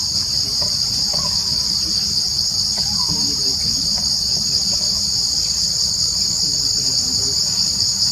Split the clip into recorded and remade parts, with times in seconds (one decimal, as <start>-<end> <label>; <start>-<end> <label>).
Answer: 0.0-8.1 recorded